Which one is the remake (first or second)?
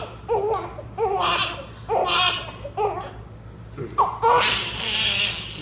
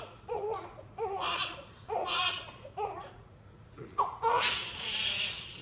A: second